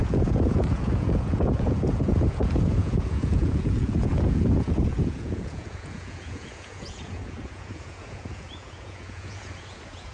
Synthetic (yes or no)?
yes